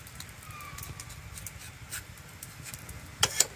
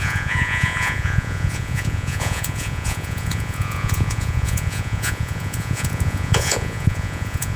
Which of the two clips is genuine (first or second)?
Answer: first